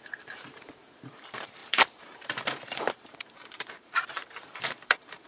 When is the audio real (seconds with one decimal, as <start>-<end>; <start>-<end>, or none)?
none